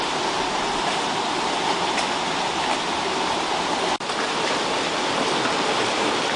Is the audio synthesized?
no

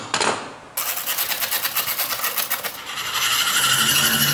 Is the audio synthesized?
no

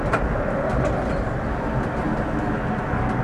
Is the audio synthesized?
no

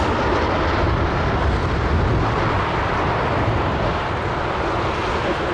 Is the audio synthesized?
no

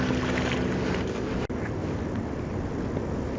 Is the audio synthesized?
no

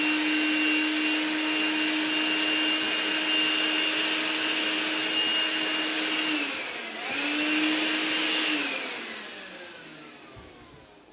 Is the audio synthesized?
no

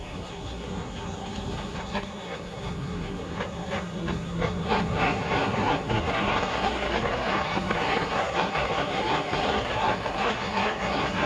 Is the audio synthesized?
yes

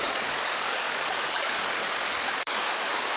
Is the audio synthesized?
yes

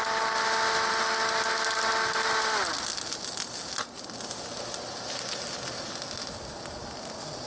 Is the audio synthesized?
no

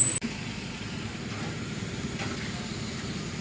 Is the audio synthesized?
no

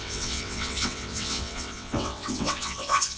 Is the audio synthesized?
yes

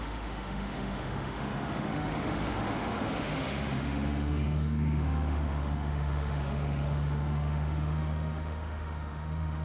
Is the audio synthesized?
yes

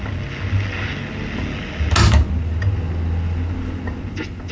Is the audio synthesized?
no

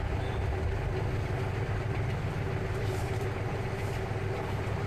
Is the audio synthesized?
no